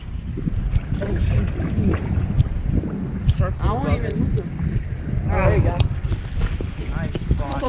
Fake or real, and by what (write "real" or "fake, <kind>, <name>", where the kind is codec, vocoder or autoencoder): real